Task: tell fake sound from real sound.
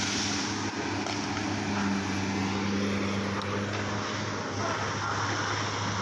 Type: real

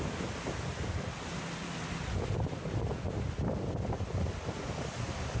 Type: real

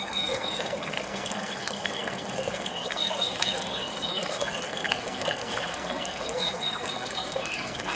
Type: fake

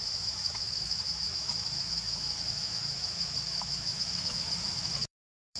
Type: fake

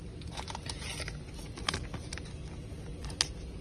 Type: real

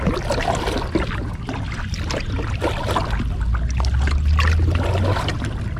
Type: real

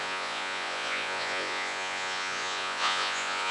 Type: fake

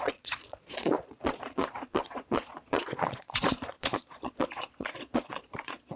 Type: fake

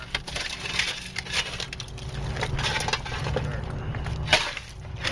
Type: real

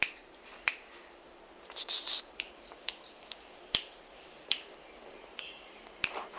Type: fake